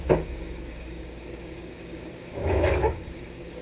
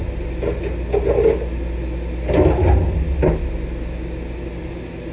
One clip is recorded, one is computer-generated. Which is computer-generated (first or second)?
first